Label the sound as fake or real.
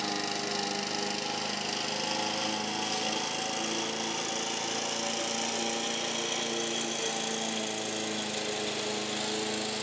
real